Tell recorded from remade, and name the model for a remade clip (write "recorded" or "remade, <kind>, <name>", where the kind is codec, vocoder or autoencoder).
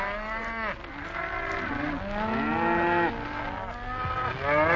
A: recorded